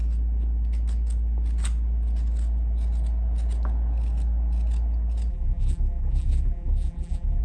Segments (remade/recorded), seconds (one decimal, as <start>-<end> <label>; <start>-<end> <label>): 0.0-5.3 recorded; 5.3-7.4 remade